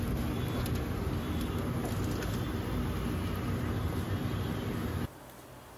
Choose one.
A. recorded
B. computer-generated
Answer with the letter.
A